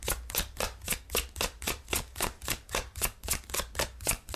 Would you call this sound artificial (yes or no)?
yes